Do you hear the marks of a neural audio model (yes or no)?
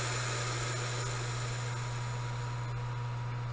no